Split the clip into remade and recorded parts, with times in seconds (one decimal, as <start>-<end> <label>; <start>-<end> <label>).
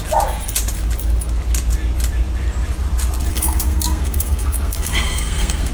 0.0-3.3 recorded; 3.3-5.7 remade